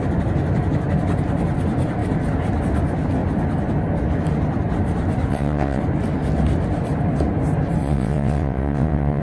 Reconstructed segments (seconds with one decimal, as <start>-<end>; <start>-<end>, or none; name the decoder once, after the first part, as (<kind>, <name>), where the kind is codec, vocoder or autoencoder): 5.3-5.8 (vocoder, WaveNeXt); 7.8-9.2